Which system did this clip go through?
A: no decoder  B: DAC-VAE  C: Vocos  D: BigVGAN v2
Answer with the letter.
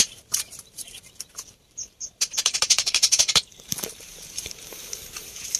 D